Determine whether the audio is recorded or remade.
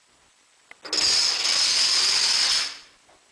recorded